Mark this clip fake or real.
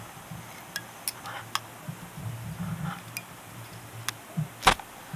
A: real